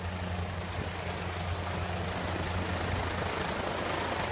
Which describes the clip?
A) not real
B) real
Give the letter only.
B